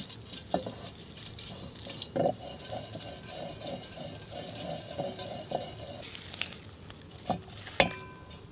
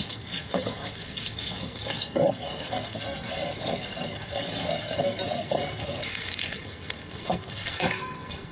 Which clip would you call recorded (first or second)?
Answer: first